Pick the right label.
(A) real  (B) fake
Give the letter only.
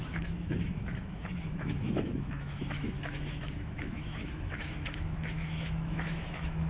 B